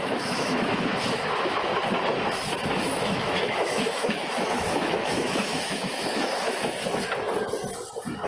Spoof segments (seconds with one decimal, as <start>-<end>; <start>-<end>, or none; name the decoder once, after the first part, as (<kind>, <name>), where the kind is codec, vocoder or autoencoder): 0.0-1.7 (autoencoder, DAC-VAE); 3.0-6.8